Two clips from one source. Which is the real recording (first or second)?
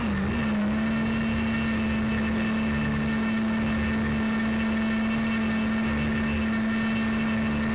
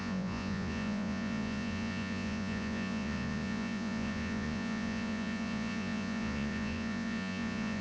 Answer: first